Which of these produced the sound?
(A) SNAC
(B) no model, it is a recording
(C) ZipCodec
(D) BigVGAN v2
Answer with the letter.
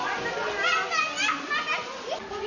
B